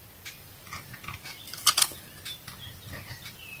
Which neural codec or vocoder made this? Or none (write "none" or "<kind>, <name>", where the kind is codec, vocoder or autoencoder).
vocoder, BigVGAN v2